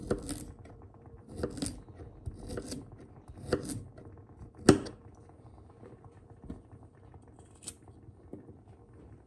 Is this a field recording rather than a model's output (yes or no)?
yes